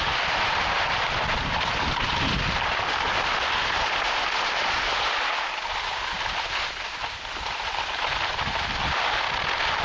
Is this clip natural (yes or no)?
yes